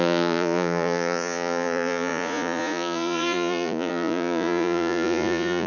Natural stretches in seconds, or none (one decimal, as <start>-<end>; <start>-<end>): none